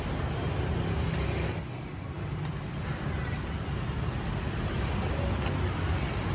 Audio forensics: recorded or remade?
recorded